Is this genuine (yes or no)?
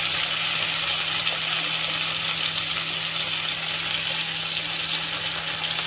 yes